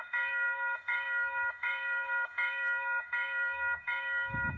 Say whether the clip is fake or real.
fake